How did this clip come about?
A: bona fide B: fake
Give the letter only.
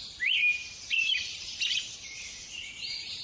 B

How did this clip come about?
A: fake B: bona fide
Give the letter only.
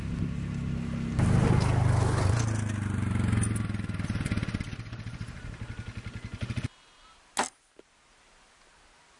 B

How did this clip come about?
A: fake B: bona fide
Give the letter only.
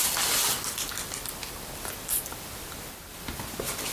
B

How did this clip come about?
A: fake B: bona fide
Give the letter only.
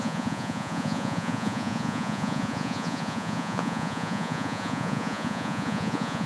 A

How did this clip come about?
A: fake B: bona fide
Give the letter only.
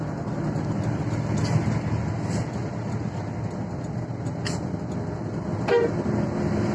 B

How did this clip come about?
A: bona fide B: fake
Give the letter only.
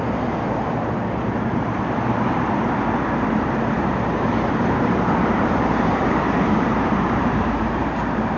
B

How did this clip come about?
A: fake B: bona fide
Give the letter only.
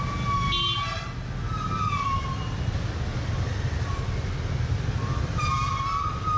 B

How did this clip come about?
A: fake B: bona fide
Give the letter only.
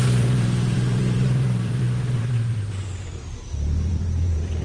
A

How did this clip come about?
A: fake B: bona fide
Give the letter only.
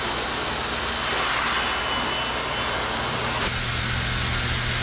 B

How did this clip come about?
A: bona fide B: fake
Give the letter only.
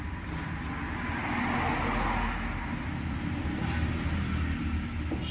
A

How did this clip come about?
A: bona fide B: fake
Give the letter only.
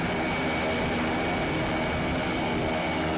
A